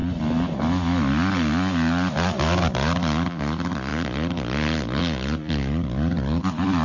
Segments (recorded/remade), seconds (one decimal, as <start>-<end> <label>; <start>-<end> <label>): 0.0-6.8 recorded